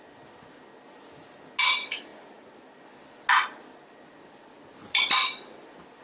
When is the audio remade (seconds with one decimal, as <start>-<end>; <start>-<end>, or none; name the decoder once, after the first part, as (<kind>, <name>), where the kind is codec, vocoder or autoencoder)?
none